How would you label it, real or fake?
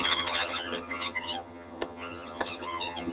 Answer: fake